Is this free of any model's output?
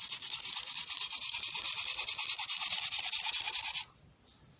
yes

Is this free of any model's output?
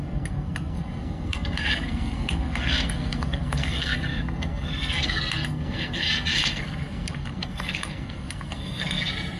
no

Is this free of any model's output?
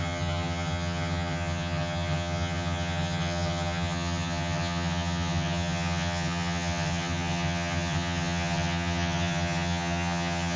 no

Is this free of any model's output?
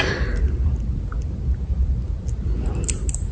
yes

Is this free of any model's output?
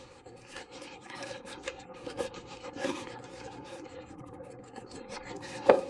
no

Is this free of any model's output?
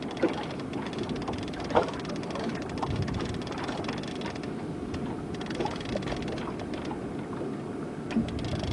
yes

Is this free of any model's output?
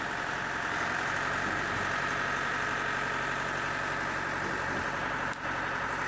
no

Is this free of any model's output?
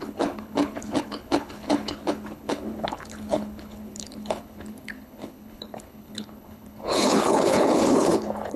no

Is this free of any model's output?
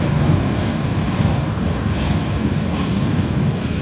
no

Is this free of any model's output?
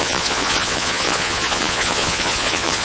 no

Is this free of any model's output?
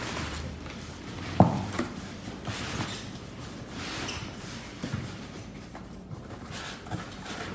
no